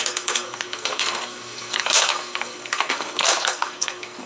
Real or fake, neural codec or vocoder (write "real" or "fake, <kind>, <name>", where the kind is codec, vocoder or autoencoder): fake, codec, SNAC